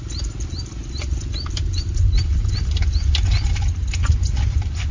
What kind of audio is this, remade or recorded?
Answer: recorded